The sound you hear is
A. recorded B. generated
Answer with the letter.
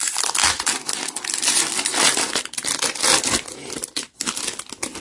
A